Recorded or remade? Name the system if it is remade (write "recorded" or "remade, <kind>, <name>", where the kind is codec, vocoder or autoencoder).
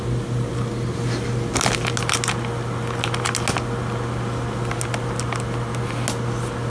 recorded